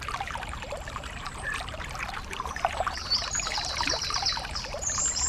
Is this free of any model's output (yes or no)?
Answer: no